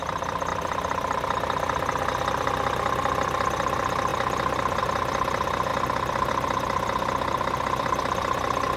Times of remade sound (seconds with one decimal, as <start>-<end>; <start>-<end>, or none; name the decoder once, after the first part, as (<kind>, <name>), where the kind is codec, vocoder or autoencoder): none